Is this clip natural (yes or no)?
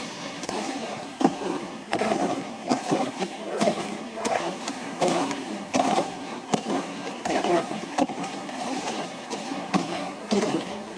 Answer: no